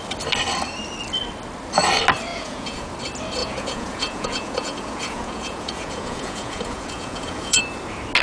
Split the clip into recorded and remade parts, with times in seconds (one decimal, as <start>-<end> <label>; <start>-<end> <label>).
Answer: 0.0-2.3 recorded; 2.3-2.9 remade; 2.9-3.4 recorded; 3.4-7.6 remade; 7.6-8.2 recorded